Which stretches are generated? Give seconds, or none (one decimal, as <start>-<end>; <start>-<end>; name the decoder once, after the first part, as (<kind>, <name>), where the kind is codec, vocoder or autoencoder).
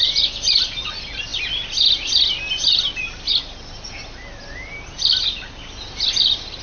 none